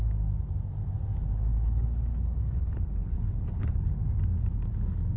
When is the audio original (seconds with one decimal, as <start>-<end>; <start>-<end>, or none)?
0.0-1.5; 3.9-5.2